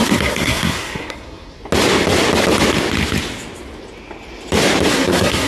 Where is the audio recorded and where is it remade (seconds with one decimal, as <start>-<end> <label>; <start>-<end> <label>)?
0.0-1.6 remade; 1.6-4.9 recorded; 4.9-5.5 remade

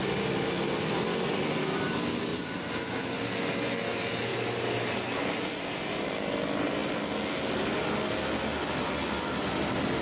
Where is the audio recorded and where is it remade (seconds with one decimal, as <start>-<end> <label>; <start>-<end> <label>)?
0.0-2.3 recorded; 2.3-3.1 remade; 3.1-4.3 recorded; 4.3-6.1 remade; 6.1-10.0 recorded

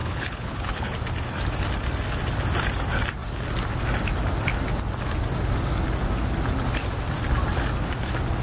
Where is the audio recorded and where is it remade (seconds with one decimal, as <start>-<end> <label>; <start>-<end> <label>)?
0.0-1.0 remade; 1.0-8.4 recorded

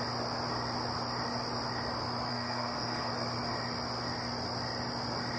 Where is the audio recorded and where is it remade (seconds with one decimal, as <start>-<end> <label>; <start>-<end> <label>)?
0.0-2.3 recorded; 2.3-3.1 remade; 3.1-5.4 recorded

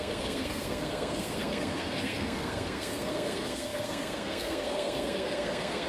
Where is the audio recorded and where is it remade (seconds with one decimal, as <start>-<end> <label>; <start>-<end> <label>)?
0.0-5.9 remade

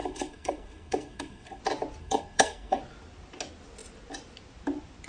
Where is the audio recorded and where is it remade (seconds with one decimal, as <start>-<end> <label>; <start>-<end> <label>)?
0.0-1.6 remade; 1.6-2.0 recorded; 2.0-2.8 remade; 2.8-5.1 recorded